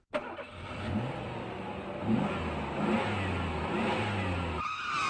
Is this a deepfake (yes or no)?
no